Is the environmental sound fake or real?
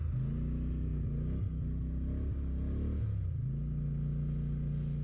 real